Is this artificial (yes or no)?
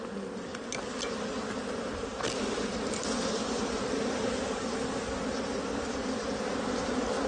no